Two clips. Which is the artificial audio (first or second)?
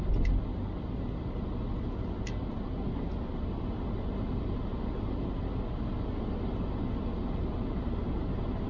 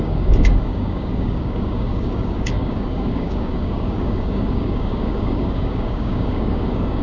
second